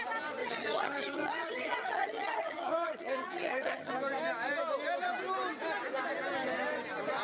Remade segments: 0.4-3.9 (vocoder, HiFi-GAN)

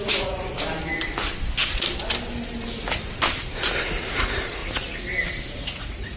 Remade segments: 0.0-0.4 (vocoder, Vocos); 4.1-4.6; 5.5-6.2